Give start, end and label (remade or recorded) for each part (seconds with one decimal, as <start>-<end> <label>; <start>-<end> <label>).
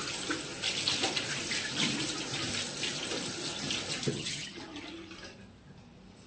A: 0.0-4.1 recorded; 4.1-4.6 remade; 4.6-6.3 recorded